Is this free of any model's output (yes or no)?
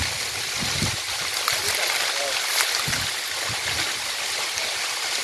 yes